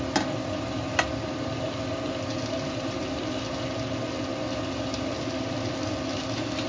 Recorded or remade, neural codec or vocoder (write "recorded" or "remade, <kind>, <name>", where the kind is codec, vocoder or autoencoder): recorded